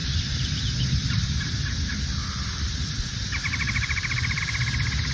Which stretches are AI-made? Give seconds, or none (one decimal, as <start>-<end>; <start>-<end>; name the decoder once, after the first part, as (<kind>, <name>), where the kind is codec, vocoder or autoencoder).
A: 0.0-0.6 (vocoder, BigVGAN v2); 2.2-4.4